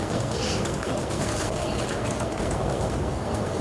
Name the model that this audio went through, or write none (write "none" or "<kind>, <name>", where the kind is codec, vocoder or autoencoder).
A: codec, SNAC